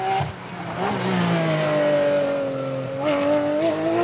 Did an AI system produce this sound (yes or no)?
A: no